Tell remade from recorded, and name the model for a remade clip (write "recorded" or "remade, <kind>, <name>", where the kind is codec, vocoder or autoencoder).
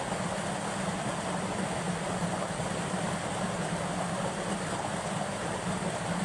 recorded